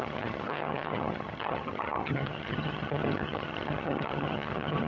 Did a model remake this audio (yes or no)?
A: yes